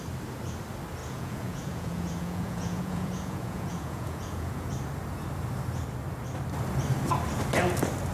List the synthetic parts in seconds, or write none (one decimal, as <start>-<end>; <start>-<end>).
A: 1.0-4.7

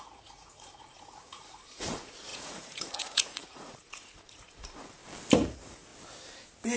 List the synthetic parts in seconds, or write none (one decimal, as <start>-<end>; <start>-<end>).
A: 0.0-5.0; 5.5-5.9

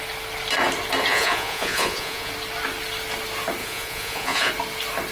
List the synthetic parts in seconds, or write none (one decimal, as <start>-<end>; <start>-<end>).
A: 1.1-2.3; 3.6-4.5

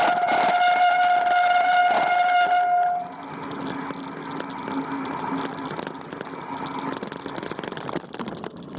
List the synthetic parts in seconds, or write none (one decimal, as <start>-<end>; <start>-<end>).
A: none

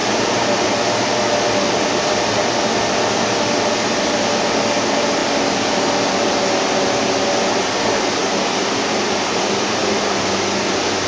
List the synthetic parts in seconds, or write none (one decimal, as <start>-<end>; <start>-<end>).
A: none

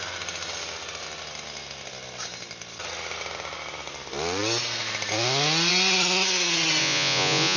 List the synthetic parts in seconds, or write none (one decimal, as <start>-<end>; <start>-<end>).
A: 6.8-7.6

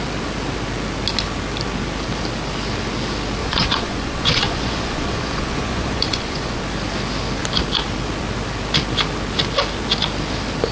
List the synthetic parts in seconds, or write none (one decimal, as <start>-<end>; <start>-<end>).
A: 3.4-6.6